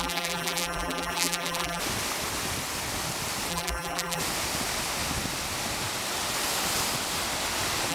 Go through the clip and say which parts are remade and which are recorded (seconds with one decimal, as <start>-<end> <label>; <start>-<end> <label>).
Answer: 0.0-1.8 remade; 1.8-3.5 recorded; 3.5-4.2 remade; 4.2-7.9 recorded

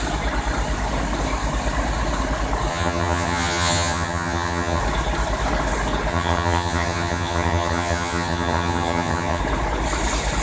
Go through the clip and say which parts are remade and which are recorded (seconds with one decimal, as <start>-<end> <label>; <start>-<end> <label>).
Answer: 0.0-2.7 recorded; 2.7-4.8 remade; 4.8-6.1 recorded; 6.1-9.4 remade; 9.4-10.4 recorded

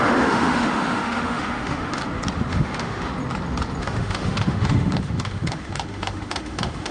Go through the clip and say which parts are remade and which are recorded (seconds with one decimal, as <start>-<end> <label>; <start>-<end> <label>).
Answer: 0.0-2.0 remade; 2.0-2.5 recorded; 2.5-3.1 remade; 3.1-3.8 recorded; 3.8-6.9 remade

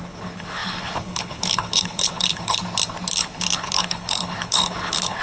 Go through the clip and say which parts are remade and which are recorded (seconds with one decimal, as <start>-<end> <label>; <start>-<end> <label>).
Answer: 0.0-2.6 remade; 2.6-3.1 recorded; 3.1-5.2 remade

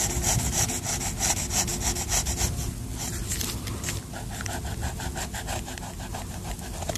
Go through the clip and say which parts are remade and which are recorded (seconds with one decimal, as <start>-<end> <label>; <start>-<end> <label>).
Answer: 0.0-7.0 recorded

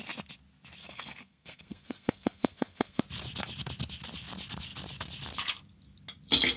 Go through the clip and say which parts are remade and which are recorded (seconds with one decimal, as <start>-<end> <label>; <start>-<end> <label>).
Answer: 0.0-0.8 recorded; 0.8-3.0 remade; 3.0-6.6 recorded